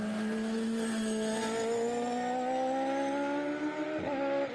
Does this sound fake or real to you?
real